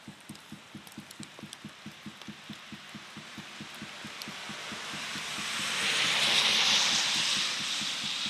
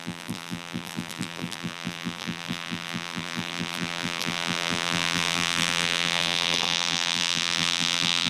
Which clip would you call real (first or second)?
first